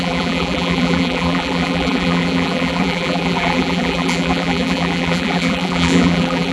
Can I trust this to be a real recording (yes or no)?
no